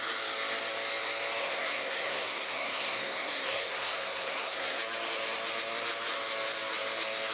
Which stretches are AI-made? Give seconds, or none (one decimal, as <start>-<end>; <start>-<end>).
1.4-4.8